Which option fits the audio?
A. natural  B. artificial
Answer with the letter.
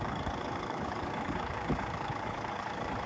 B